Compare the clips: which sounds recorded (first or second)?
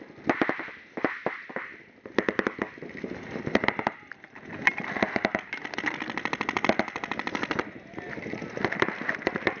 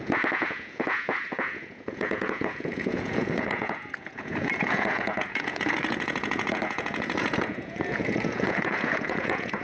first